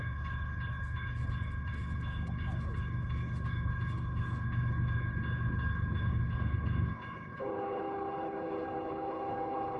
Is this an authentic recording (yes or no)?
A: no